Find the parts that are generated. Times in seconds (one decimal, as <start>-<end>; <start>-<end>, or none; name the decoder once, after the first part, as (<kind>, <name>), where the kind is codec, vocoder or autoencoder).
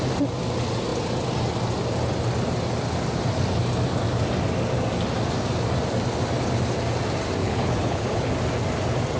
7.4-8.3 (codec, HILCodec)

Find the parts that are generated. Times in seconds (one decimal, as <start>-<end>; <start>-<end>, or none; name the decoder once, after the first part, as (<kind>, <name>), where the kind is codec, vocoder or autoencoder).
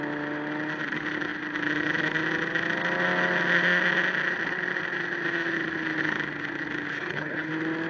6.9-7.5 (codec, HILCodec)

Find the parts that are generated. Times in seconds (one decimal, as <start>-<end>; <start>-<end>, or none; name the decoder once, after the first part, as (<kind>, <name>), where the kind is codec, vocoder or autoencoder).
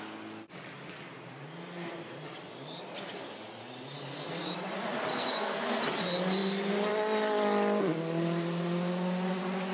5.1-5.8 (codec, SNAC)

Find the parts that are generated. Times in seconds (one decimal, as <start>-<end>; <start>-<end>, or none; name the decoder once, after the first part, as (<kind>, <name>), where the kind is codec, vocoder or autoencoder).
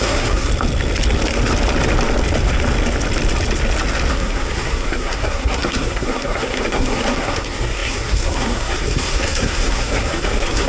0.0-0.5 (codec, SNAC); 4.1-10.7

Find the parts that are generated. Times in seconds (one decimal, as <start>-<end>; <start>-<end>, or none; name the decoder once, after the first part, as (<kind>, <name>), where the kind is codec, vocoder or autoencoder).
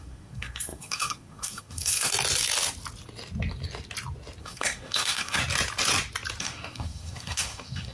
0.0-2.1 (codec, SNAC); 4.4-5.4; 6.4-7.9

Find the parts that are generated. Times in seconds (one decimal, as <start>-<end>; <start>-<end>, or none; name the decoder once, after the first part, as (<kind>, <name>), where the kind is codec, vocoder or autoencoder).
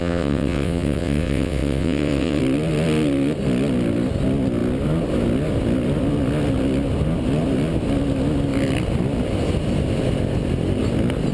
0.0-2.4 (vocoder, WaveNeXt)